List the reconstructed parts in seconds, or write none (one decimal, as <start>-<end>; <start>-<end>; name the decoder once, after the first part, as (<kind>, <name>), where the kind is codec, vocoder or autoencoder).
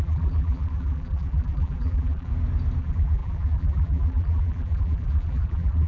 0.0-2.3 (vocoder, BigVGAN v2); 2.8-5.9